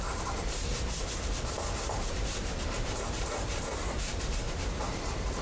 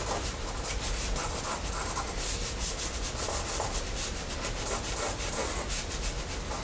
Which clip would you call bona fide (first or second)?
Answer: second